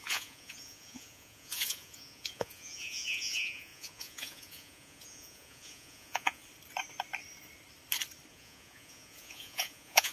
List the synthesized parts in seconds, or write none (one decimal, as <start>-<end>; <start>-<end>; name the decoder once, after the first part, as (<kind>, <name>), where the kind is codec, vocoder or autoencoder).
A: 0.0-6.4 (vocoder, Vocos); 8.3-10.1